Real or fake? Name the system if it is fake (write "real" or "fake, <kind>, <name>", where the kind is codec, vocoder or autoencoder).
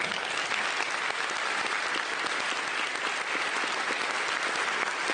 real